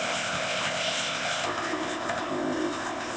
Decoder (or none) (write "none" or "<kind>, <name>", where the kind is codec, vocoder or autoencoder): codec, ZipCodec